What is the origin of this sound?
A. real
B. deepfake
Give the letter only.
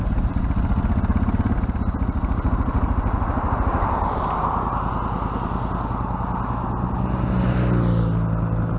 A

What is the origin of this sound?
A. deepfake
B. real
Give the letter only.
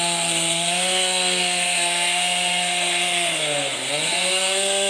A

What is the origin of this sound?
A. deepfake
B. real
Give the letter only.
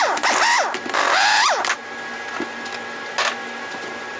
B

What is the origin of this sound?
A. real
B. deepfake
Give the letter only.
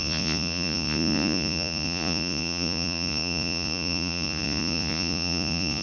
B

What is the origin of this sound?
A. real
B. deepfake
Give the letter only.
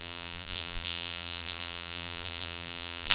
B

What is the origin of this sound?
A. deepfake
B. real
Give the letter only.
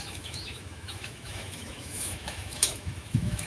A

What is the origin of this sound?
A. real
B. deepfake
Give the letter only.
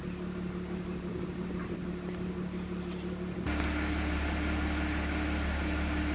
A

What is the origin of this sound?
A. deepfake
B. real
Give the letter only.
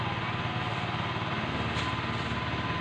B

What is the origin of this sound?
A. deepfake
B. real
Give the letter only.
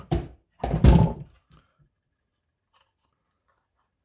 A